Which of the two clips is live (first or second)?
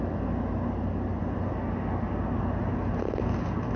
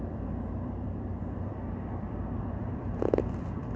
first